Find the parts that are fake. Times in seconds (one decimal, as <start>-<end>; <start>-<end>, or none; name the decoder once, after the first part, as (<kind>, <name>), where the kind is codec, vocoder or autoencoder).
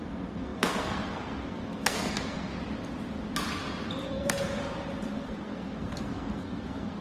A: 0.0-2.5 (codec, SNAC); 4.1-4.6; 5.1-7.0